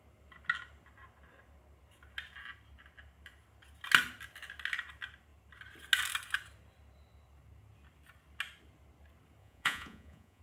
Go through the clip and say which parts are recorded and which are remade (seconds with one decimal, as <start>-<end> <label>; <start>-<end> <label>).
0.0-9.4 recorded; 9.4-10.4 remade